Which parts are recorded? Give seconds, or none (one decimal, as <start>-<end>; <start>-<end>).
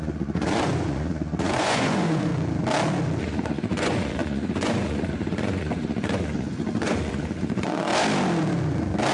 2.3-3.2; 7.9-9.1